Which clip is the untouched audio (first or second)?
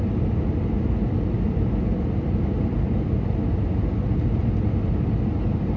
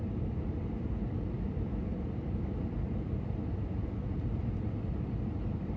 first